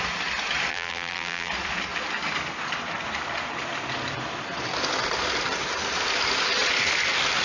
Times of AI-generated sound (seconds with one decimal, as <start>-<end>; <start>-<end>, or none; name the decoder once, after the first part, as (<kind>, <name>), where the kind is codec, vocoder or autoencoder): 0.7-1.5 (vocoder, BigVGAN v2)